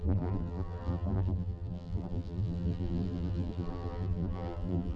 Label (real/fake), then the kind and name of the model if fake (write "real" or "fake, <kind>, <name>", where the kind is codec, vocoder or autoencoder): fake, vocoder, BigVGAN v2